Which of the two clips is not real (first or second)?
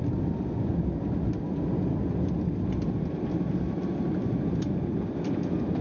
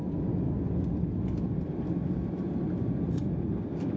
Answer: first